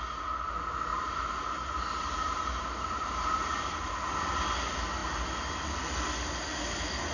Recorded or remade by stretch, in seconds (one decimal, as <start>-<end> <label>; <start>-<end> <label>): 0.0-0.9 recorded; 0.9-3.9 remade; 3.9-7.1 recorded